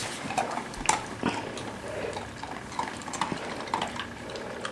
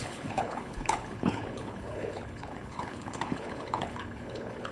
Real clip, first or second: first